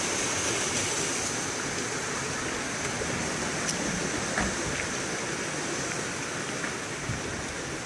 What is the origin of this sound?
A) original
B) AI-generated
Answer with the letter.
A